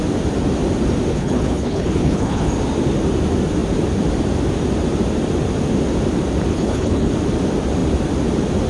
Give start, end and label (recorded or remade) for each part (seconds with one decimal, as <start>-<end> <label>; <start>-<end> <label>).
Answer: 0.0-1.1 recorded; 1.1-2.5 remade; 2.5-6.5 recorded; 6.5-7.1 remade; 7.1-8.7 recorded